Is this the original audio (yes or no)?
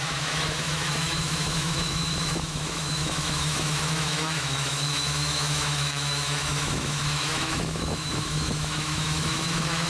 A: no